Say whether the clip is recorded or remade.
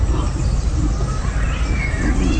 recorded